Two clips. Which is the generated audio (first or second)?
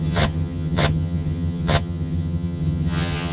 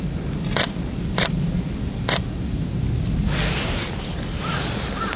first